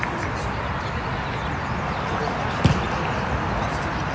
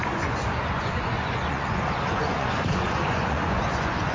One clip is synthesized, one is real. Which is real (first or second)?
first